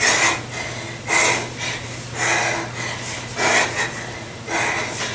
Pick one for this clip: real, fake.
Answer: real